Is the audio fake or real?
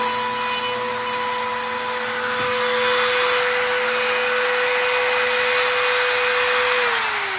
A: real